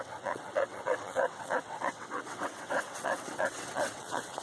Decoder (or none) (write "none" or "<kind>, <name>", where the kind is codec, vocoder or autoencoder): vocoder, WaveNeXt